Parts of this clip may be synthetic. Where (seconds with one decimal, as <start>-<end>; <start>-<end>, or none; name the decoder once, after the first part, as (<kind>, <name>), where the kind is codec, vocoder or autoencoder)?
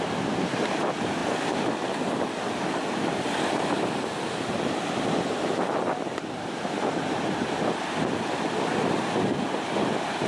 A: none